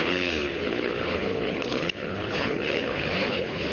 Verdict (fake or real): fake